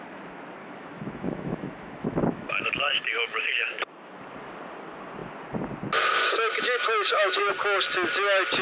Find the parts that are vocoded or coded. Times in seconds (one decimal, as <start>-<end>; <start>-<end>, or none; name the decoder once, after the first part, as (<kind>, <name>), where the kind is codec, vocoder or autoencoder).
0.6-4.2 (autoencoder, DAC-VAE); 6.2-7.5